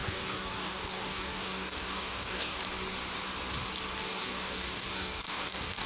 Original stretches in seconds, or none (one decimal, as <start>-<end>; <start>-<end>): 2.6-4.0